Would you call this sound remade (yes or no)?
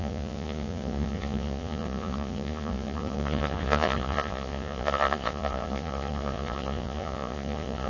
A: yes